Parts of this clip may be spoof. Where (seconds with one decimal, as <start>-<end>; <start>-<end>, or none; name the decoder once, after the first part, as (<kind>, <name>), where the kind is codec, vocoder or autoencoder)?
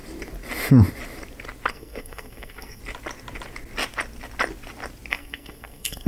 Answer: 1.7-2.8 (codec, SNAC); 5.1-6.1